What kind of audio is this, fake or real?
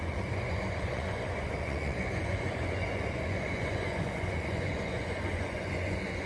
fake